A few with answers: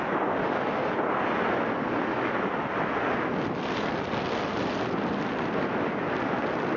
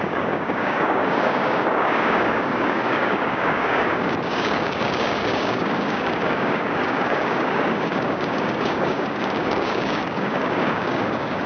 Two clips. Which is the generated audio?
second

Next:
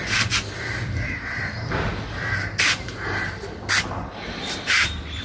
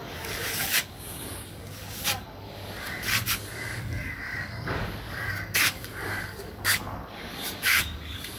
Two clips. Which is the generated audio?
second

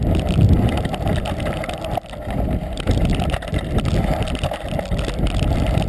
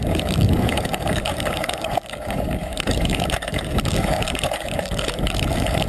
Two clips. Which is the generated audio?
second